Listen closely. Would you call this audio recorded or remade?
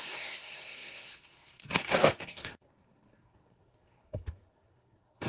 remade